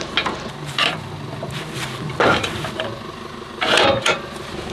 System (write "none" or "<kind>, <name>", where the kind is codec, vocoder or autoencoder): none